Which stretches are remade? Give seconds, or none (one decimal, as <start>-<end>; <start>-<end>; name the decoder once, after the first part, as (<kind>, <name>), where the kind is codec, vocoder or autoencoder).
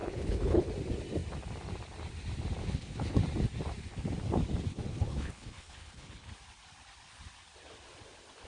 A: 0.0-0.7 (codec, HILCodec); 2.6-3.2; 4.7-6.3